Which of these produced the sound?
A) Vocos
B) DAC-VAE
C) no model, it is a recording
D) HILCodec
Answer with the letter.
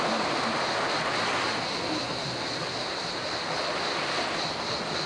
C